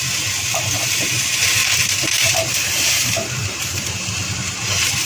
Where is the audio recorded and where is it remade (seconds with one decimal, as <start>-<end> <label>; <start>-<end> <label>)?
0.0-1.6 recorded; 1.6-5.1 remade